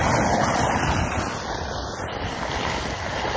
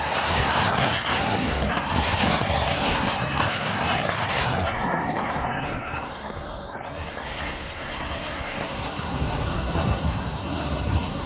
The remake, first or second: second